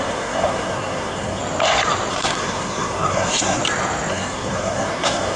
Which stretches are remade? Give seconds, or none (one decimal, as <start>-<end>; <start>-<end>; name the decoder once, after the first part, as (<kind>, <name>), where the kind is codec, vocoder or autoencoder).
0.0-1.4 (codec, SNAC); 2.1-3.6; 4.1-5.4